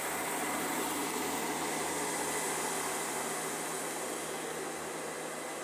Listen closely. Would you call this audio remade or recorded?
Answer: recorded